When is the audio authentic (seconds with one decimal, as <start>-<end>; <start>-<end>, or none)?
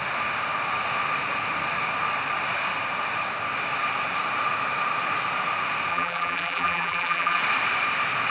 0.0-5.9; 7.4-8.3